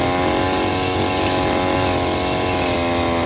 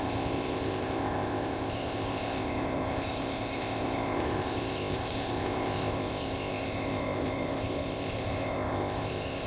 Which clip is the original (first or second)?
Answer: first